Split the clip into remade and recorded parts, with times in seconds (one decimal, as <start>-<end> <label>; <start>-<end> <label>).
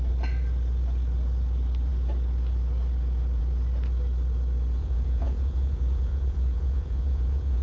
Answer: 0.0-4.8 recorded; 4.8-7.6 remade